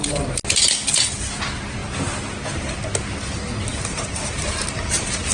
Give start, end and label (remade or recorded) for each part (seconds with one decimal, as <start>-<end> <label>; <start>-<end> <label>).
0.0-3.7 recorded; 3.7-5.3 remade